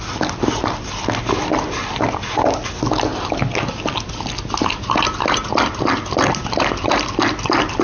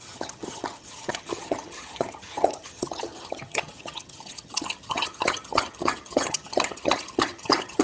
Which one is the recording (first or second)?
first